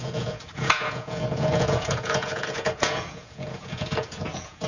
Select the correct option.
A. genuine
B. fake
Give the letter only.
B